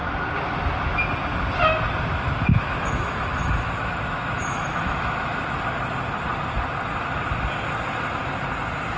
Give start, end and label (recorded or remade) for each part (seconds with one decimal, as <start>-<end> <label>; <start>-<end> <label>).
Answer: 0.0-2.5 recorded; 2.5-5.4 remade; 5.4-9.0 recorded